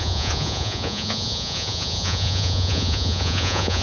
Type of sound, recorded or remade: remade